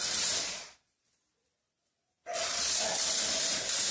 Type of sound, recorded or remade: recorded